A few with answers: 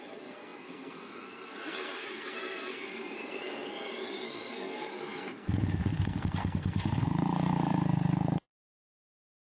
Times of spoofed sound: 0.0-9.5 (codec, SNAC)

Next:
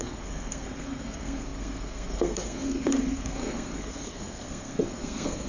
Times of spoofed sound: 0.0-5.5 (codec, SNAC)

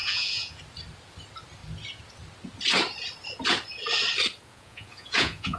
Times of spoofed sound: 0.0-0.6 (vocoder, Vocos); 4.5-5.6